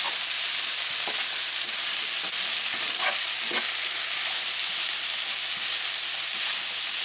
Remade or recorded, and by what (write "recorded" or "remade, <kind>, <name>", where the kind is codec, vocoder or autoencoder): recorded